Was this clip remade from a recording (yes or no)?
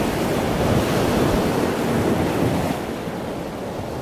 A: no